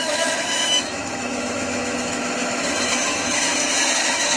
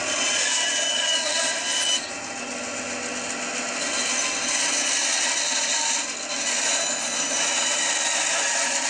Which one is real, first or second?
second